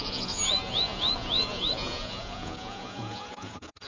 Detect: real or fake fake